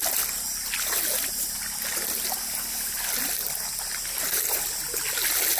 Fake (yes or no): no